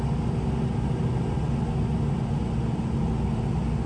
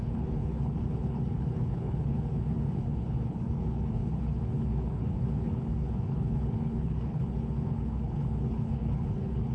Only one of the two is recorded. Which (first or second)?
first